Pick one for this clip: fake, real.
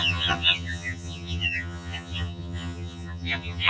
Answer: fake